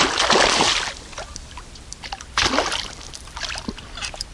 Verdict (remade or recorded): recorded